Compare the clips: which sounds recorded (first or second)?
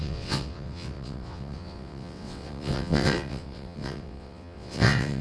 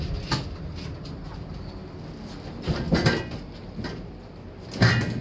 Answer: second